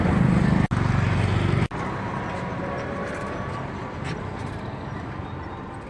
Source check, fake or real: real